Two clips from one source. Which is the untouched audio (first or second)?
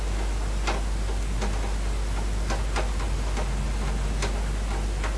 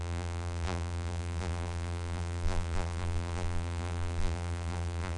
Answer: first